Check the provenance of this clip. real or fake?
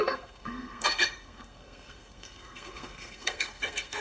fake